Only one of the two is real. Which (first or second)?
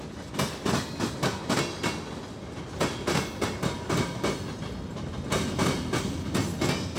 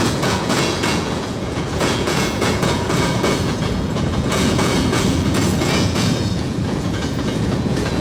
first